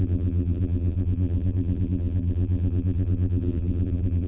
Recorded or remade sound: remade